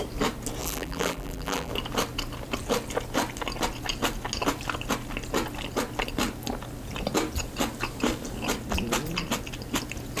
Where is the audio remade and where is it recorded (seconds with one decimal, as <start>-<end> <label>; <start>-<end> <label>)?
0.0-0.6 recorded; 0.6-1.7 remade; 1.7-10.2 recorded